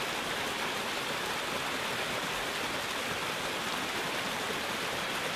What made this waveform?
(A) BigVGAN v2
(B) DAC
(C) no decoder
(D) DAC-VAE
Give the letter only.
C